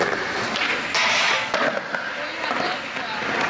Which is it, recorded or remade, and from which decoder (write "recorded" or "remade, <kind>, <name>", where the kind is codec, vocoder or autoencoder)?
recorded